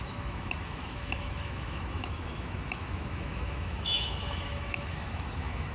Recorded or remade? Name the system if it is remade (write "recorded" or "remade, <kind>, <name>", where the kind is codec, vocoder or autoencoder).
remade, autoencoder, DAC-VAE